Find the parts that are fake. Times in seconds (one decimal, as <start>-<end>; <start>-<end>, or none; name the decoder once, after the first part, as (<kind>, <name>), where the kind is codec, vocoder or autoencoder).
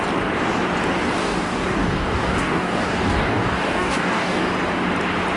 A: 1.2-4.4 (codec, DAC)